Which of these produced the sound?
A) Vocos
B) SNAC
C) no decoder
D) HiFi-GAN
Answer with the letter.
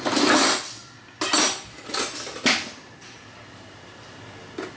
C